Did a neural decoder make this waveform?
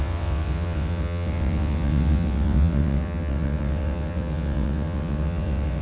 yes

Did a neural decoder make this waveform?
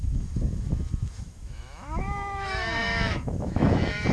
yes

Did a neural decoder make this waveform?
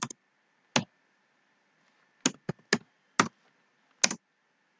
no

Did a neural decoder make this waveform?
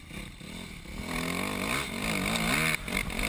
no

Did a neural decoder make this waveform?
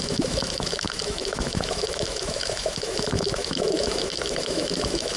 yes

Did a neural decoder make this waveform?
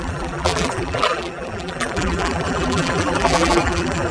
yes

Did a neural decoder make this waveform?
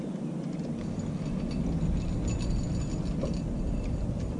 no